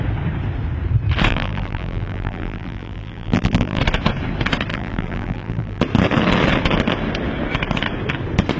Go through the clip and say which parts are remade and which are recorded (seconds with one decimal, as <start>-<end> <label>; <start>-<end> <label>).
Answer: 0.0-1.3 recorded; 1.3-3.8 remade; 3.8-4.7 recorded; 4.7-5.8 remade; 5.8-8.6 recorded